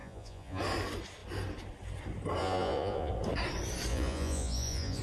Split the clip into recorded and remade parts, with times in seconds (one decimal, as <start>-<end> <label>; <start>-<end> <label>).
0.0-0.6 remade; 0.6-2.4 recorded; 2.4-3.1 remade; 3.1-3.9 recorded; 3.9-5.0 remade